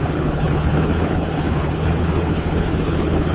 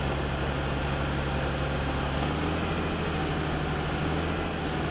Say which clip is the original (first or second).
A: second